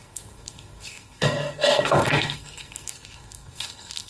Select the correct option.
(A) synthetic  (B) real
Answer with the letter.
A